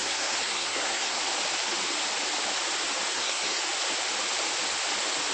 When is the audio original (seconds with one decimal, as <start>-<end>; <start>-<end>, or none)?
1.2-3.1; 3.6-5.3